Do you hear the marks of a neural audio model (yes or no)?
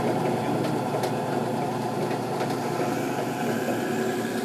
no